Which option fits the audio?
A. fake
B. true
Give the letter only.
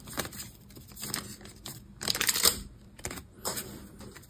A